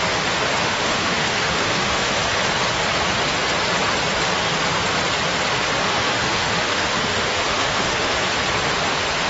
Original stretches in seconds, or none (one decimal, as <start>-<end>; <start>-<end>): 0.0-0.6; 2.2-5.9; 8.2-9.3